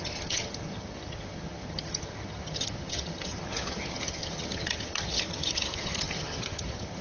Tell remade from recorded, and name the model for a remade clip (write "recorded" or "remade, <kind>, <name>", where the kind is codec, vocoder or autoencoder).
remade, vocoder, HiFi-GAN